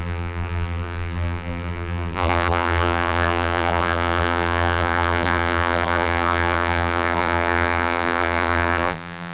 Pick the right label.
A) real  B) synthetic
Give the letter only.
B